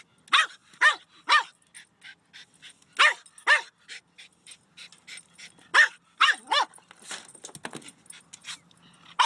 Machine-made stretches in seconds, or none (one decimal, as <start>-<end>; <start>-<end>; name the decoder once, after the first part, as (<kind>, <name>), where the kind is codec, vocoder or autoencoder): none